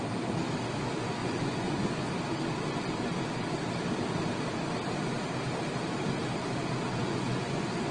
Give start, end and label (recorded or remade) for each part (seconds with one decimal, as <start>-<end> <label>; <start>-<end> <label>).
0.0-1.2 recorded; 1.2-2.1 remade; 2.1-7.0 recorded; 7.0-7.9 remade